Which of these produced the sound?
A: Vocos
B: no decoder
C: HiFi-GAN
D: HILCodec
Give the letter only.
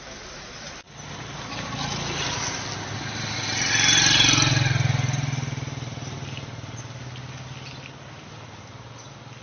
B